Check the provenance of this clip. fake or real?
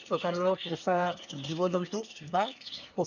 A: fake